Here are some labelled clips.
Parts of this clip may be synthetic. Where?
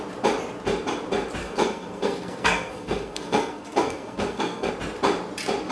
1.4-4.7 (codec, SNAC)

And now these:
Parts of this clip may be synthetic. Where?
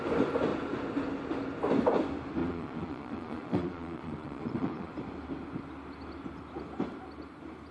2.4-4.9 (vocoder, Vocos)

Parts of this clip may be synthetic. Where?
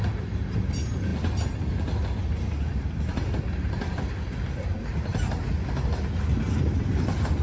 none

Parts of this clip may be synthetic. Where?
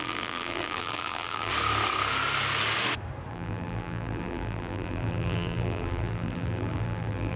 0.0-1.5 (vocoder, BigVGAN v2); 3.3-7.4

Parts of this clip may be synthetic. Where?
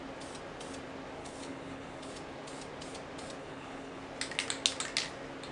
1.2-2.1 (codec, HILCodec); 3.4-4.0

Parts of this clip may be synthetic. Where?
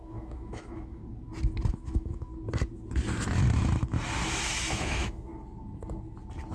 0.0-1.0 (autoencoder, DAC-VAE); 1.7-2.3; 4.7-5.3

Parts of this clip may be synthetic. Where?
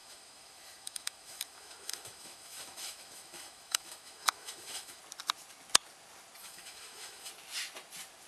0.0-5.0 (autoencoder, DAC-VAE); 6.4-7.3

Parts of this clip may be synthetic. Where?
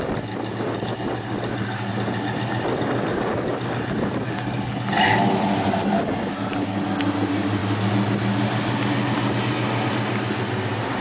none